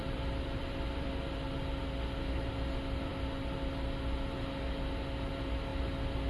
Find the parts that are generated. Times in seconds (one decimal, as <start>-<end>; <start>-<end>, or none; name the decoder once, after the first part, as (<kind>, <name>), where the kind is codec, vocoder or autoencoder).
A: 0.0-1.1 (vocoder, BigVGAN v2)